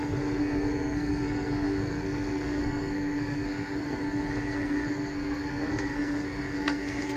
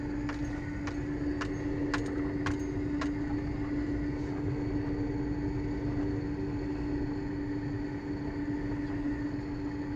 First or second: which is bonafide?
second